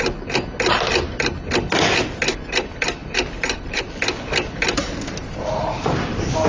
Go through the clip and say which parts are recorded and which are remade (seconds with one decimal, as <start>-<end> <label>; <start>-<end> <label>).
0.0-3.0 recorded; 3.0-3.8 remade; 3.8-5.2 recorded; 5.2-6.5 remade

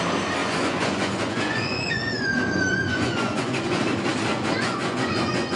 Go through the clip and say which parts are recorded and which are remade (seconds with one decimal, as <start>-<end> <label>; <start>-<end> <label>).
0.0-0.4 recorded; 0.4-3.8 remade; 3.8-4.3 recorded; 4.3-5.6 remade

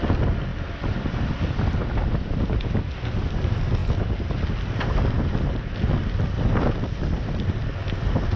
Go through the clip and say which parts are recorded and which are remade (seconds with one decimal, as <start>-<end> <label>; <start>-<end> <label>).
0.0-8.4 recorded